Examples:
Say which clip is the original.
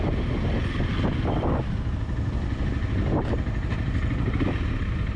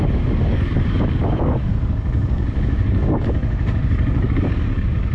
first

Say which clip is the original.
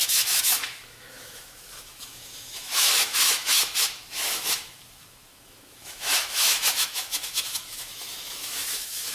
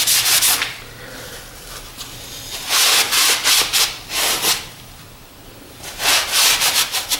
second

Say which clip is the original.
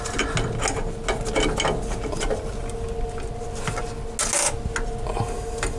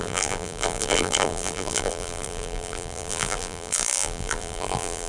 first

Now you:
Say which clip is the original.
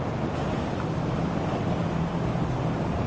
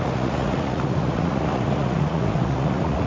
first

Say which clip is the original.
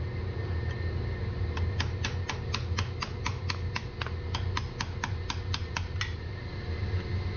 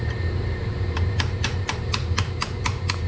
first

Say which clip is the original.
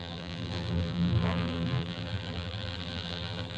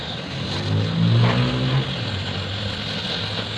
second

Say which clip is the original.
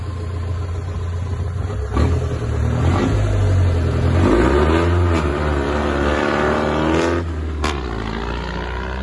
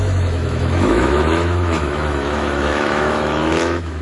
first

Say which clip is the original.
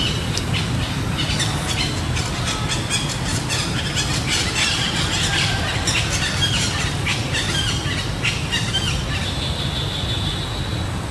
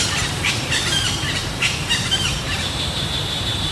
first